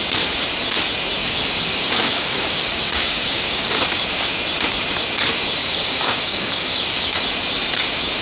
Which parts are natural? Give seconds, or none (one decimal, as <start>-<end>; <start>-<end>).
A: 0.0-1.2; 3.8-5.6; 7.2-8.2